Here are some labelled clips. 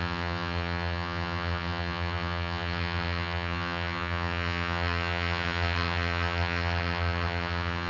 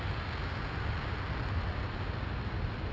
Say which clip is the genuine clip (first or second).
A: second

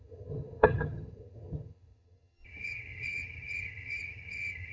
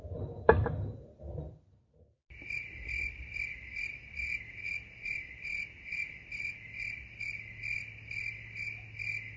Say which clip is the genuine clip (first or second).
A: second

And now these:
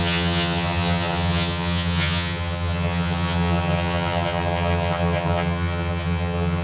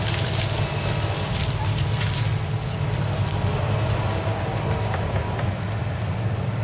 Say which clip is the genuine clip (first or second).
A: second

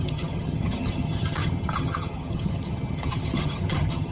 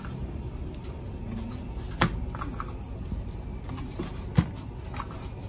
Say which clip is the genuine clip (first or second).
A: second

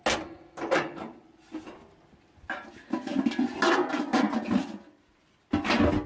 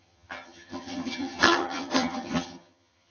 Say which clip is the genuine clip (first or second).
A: first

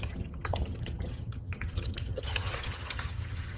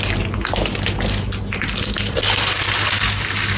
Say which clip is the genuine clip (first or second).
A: second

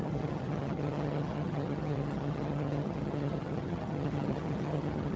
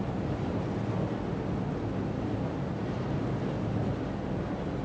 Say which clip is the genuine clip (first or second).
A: second